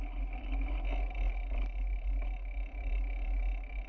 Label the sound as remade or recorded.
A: recorded